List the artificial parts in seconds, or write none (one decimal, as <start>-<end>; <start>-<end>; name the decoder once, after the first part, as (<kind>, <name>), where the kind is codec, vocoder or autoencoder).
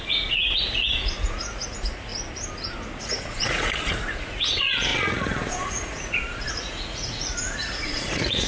0.0-2.1 (vocoder, Vocos); 2.7-8.5